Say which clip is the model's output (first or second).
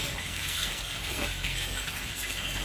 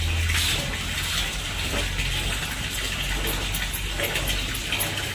first